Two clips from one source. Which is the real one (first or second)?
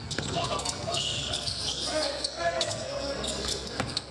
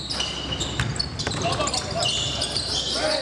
second